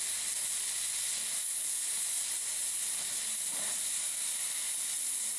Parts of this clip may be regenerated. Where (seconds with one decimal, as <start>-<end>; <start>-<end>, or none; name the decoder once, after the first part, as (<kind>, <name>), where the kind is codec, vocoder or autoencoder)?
3.5-4.2 (vocoder, BigVGAN v2)